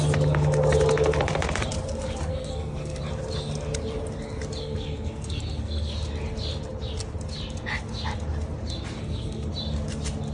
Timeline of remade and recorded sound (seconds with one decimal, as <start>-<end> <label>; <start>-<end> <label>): 0.0-2.3 recorded; 2.3-3.0 remade; 3.0-4.6 recorded; 4.6-5.9 remade; 5.9-9.0 recorded; 9.0-9.5 remade; 9.5-10.3 recorded